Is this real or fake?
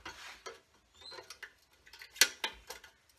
real